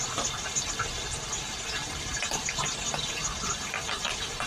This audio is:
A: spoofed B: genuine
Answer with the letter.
B